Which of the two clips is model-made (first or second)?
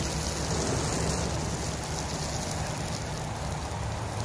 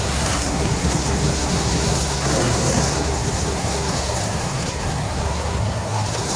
second